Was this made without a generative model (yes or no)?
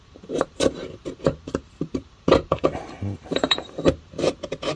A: no